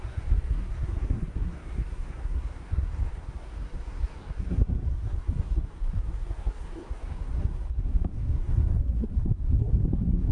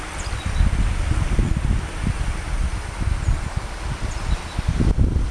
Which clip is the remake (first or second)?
first